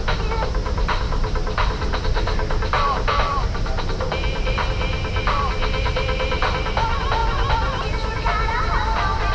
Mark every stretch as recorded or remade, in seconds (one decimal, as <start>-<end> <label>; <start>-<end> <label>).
0.0-9.3 recorded

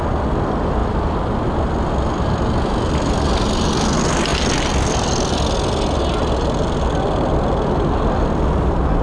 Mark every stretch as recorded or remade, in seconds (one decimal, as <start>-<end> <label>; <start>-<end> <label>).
0.0-9.0 recorded

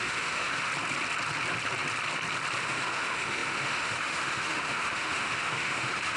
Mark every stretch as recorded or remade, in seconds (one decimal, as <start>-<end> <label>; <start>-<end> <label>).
0.0-0.7 remade; 0.7-2.6 recorded; 2.6-6.2 remade